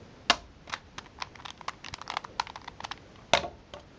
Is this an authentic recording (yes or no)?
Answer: yes